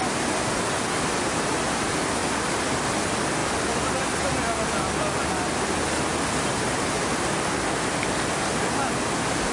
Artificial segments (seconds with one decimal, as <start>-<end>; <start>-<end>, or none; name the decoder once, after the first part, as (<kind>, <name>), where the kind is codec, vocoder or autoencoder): none